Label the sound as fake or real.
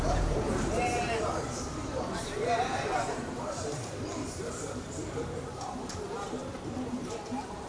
fake